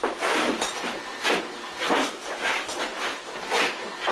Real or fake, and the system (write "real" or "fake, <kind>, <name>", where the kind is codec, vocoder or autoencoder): fake, vocoder, BigVGAN v2